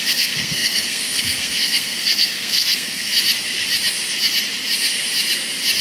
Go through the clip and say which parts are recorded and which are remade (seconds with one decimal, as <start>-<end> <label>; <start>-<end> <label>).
0.0-3.1 remade; 3.1-5.8 recorded